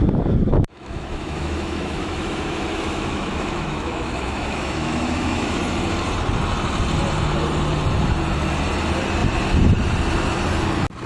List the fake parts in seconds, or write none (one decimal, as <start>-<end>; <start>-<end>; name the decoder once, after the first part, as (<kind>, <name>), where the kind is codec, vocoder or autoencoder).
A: 0.5-5.6 (autoencoder, DAC-VAE)